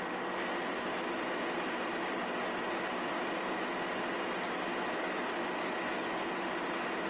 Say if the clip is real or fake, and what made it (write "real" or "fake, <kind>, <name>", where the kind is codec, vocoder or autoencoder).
real